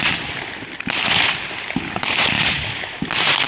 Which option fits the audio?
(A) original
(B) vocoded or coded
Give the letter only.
A